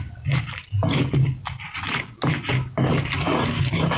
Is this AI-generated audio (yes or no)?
no